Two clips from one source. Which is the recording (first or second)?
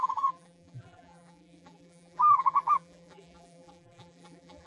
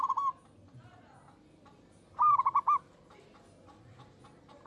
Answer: second